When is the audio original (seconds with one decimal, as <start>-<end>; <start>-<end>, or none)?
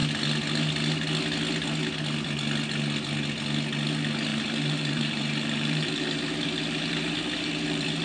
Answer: 0.0-4.3